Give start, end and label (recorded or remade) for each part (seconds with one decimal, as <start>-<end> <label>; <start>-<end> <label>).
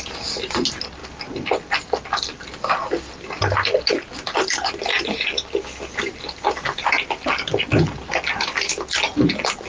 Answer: 0.0-9.7 recorded